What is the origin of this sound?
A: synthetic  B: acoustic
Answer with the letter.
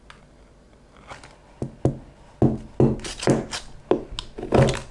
B